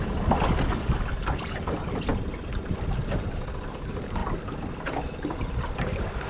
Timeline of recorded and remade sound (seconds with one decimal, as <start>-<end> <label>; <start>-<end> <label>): 0.0-6.3 recorded